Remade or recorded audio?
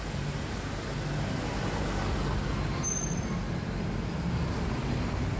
recorded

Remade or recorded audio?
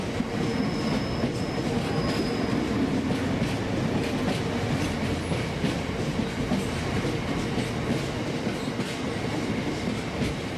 recorded